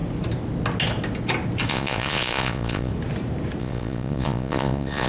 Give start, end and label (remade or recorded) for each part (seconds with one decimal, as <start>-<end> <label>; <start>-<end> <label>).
0.0-1.7 recorded; 1.7-2.9 remade; 2.9-3.6 recorded; 3.6-5.1 remade